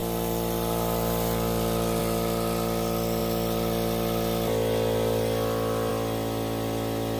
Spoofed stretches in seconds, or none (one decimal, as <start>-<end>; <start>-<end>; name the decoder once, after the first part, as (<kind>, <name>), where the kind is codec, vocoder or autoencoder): none